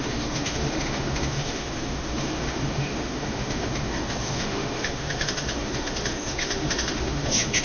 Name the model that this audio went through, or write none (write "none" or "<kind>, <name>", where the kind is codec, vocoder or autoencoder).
autoencoder, DAC-VAE